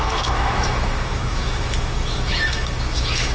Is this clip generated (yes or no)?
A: yes